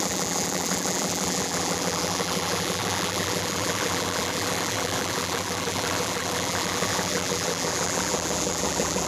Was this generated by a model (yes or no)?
yes